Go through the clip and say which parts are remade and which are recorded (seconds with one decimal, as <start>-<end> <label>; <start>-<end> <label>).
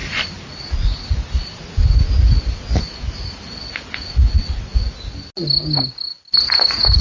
0.0-7.0 recorded